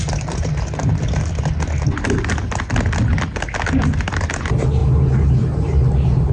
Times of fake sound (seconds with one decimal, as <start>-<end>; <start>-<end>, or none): none